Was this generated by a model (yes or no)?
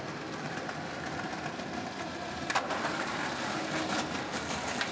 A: no